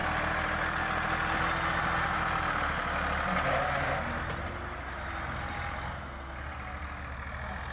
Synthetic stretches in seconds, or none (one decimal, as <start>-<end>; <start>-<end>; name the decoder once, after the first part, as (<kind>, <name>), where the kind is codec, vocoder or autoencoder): none